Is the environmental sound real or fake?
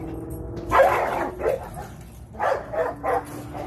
real